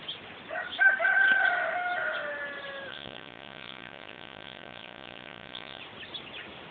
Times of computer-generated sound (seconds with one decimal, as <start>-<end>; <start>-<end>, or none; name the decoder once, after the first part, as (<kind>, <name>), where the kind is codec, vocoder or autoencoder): 2.9-5.8 (vocoder, Vocos)